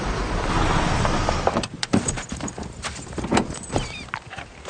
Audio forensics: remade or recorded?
remade